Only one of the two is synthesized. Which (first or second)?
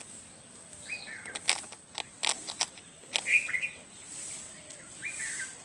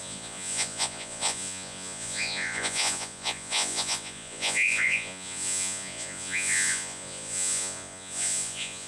second